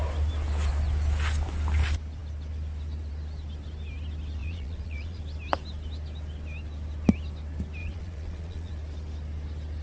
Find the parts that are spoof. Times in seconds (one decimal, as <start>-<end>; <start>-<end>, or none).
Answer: 4.4-5.2; 7.8-8.7